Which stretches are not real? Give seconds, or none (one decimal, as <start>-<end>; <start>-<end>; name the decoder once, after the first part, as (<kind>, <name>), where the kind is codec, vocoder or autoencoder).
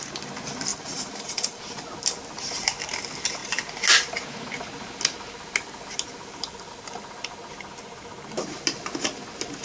0.7-1.6 (vocoder, BigVGAN v2)